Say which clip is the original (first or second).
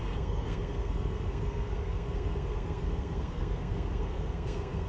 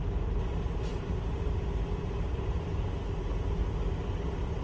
second